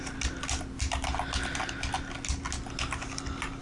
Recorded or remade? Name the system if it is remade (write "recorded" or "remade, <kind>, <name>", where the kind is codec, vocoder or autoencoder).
recorded